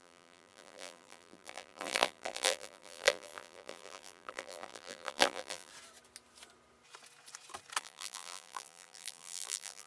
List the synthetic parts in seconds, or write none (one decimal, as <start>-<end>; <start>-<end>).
0.0-5.7; 7.8-9.9